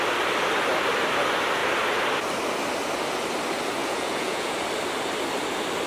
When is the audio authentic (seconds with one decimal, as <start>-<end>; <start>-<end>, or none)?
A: 0.0-3.8; 4.6-5.9